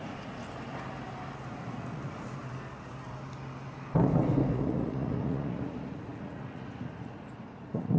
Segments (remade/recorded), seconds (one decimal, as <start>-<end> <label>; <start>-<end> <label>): 0.0-0.4 remade; 0.4-1.5 recorded; 1.5-2.4 remade; 2.4-4.5 recorded; 4.5-8.0 remade